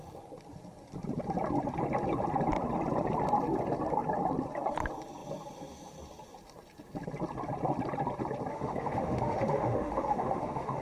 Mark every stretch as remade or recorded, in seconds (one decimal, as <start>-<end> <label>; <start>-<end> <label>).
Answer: 0.0-8.5 recorded; 8.5-10.8 remade